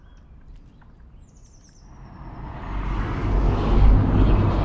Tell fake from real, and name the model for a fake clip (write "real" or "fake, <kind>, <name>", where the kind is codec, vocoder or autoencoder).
real